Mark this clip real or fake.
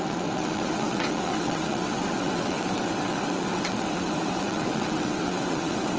fake